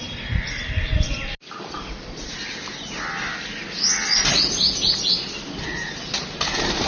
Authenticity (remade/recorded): recorded